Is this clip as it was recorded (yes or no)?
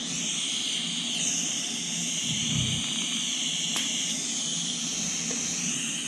yes